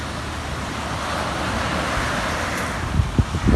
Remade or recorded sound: recorded